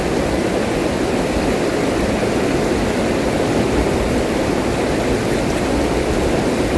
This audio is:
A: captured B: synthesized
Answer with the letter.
A